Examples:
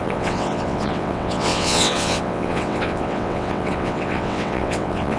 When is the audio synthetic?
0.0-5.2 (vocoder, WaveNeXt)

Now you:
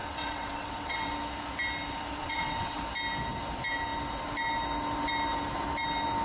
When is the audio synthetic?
0.0-1.1 (vocoder, WaveNeXt); 2.2-2.8

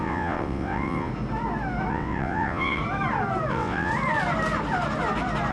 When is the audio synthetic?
0.0-1.1 (vocoder, WaveNeXt); 1.9-2.8; 3.5-3.9

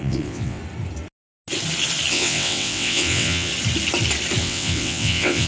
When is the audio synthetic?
0.0-0.6 (vocoder, WaveNeXt); 2.1-3.5; 4.4-5.5

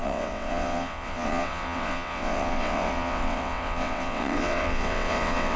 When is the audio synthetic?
0.0-5.6 (vocoder, WaveNeXt)

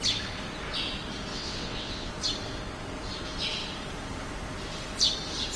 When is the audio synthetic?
1.3-2.1 (vocoder, WaveNeXt)

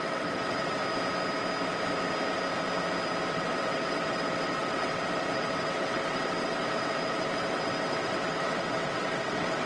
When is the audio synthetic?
0.0-0.8 (vocoder, WaveNeXt); 3.3-9.7